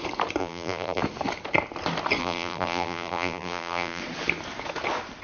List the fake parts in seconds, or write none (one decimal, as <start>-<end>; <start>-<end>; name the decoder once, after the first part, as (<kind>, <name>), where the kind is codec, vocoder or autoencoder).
0.4-1.0 (vocoder, BigVGAN v2); 2.2-4.0